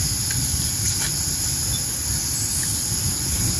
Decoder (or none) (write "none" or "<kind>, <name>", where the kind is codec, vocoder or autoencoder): none